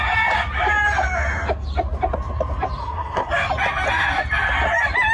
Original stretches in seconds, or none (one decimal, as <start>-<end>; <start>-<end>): 0.0-2.8; 3.3-5.1